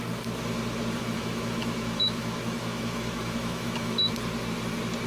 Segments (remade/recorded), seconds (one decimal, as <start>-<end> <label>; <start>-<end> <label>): 0.0-1.0 recorded; 1.0-4.1 remade; 4.1-5.1 recorded